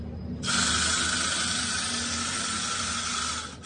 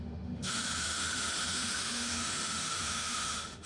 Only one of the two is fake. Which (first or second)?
second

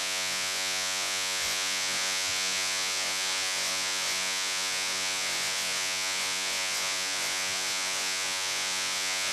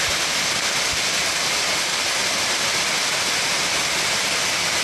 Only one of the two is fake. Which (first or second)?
first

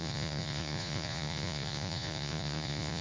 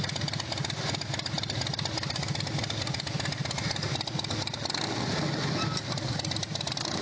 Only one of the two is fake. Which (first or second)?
first